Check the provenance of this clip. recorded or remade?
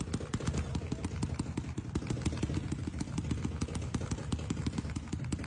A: recorded